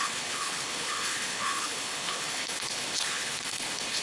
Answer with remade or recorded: remade